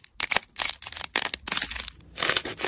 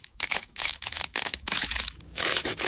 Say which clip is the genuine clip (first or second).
first